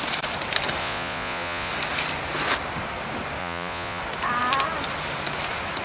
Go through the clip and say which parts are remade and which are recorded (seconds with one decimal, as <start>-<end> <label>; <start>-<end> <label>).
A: 0.0-0.8 recorded; 0.8-1.7 remade; 1.7-3.4 recorded; 3.4-4.0 remade; 4.0-5.8 recorded